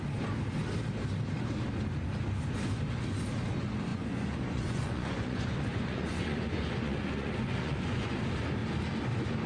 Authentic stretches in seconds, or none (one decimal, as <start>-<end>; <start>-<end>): 0.0-3.9; 8.2-9.5